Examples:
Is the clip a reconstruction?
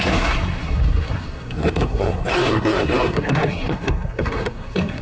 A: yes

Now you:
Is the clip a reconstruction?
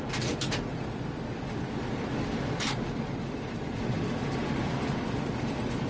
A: no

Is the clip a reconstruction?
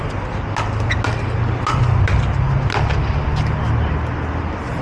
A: no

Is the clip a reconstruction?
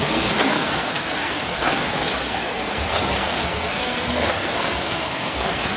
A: yes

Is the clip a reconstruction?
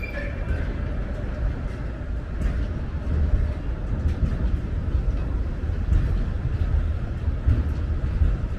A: no